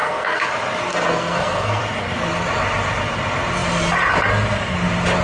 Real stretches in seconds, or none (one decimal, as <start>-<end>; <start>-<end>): 0.5-0.9; 1.8-5.2